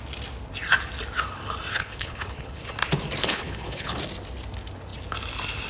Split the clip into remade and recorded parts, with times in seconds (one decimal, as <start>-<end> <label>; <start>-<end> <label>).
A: 0.0-1.7 recorded; 1.7-2.6 remade; 2.6-3.2 recorded; 3.2-4.0 remade; 4.0-5.7 recorded